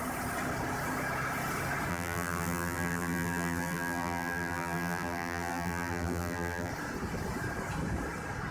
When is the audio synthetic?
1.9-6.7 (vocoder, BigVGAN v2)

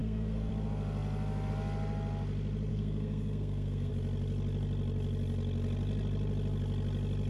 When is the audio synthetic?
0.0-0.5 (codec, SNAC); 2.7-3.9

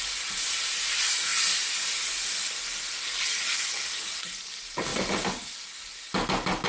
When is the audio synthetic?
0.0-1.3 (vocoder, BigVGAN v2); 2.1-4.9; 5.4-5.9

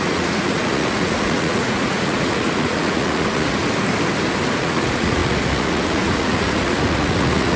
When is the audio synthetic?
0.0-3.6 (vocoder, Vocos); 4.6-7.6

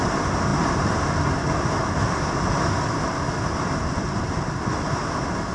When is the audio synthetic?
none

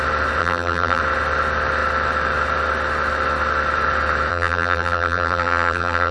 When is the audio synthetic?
0.4-1.0 (vocoder, BigVGAN v2); 4.3-6.1

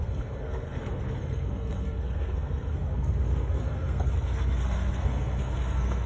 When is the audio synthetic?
0.0-6.1 (codec, SNAC)